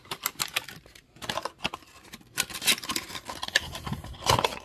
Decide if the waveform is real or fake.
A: real